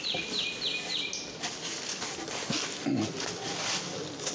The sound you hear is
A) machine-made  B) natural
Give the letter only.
B